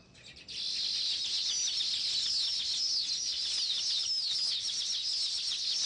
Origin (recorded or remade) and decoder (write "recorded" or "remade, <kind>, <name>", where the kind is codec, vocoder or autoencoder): recorded